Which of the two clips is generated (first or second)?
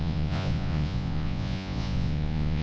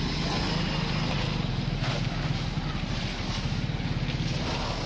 first